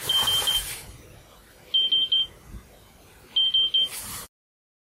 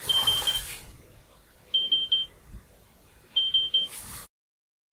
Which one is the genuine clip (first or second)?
first